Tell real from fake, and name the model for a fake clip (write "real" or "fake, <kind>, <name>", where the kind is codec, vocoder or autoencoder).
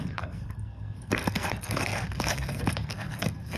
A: fake, codec, SNAC